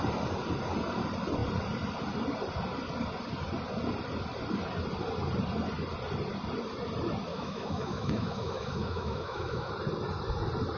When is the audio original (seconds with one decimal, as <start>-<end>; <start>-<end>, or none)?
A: 0.0-7.3; 9.7-10.8

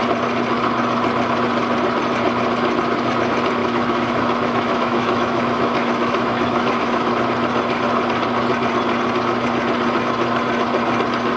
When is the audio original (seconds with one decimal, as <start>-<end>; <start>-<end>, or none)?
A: 0.0-3.6; 7.1-11.4

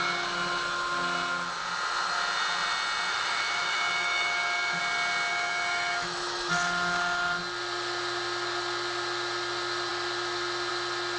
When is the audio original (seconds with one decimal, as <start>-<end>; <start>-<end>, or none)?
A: 0.0-3.1; 4.8-5.3; 6.5-11.2

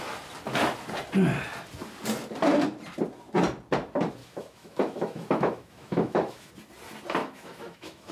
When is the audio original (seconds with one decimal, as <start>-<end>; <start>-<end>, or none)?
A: 0.0-4.2; 6.5-7.2

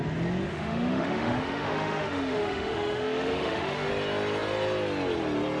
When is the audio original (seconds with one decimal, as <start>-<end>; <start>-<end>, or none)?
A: 0.0-0.5; 3.9-5.6

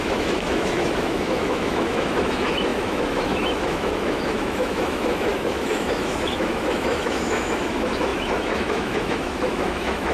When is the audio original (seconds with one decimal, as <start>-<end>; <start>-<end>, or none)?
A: none

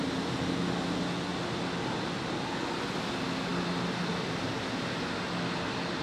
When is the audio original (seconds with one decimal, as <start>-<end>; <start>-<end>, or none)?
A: 0.0-6.0